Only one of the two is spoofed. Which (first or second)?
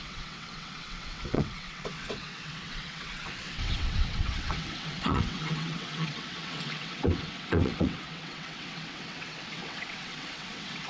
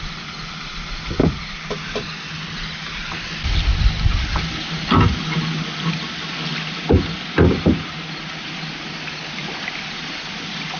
first